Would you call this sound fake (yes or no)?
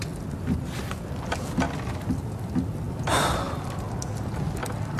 no